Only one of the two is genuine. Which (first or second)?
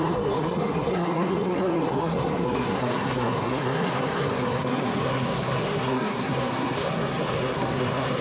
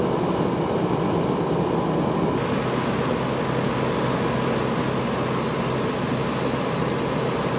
second